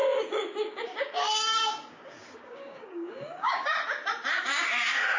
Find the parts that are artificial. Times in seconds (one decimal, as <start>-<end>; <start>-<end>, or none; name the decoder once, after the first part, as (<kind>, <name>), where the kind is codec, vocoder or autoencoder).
0.0-3.7 (codec, DAC); 4.4-5.2